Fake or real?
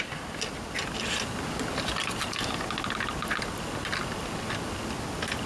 real